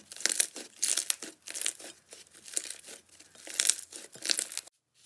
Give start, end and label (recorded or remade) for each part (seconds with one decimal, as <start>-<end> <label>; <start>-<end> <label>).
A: 0.0-5.1 recorded